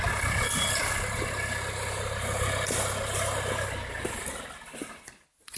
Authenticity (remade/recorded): recorded